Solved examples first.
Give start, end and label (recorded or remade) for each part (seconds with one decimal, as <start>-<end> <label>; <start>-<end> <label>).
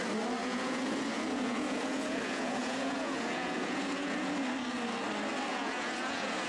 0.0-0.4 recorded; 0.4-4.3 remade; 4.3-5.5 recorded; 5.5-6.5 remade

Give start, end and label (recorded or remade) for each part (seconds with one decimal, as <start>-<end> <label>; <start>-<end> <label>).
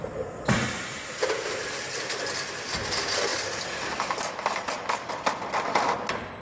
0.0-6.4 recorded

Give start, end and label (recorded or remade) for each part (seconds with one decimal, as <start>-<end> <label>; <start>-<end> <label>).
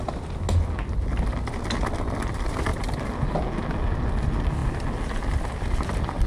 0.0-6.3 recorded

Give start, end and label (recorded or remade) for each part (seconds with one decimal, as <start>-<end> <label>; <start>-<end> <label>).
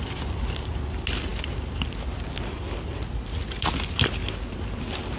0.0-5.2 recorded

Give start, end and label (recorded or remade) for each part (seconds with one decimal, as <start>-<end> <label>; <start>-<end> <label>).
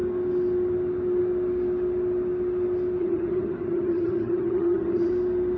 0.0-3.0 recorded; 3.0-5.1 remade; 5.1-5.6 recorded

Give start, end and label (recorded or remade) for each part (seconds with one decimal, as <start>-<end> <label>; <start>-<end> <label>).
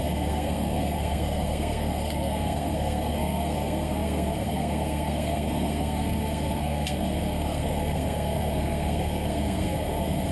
0.0-10.3 remade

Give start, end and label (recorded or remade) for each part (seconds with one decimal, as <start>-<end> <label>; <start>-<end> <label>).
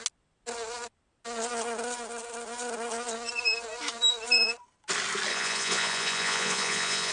0.0-5.3 recorded; 5.3-7.1 remade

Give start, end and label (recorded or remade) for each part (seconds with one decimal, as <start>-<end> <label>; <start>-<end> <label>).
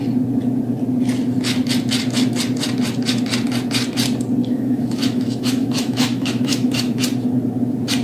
0.0-4.4 recorded; 4.4-7.0 remade; 7.0-8.0 recorded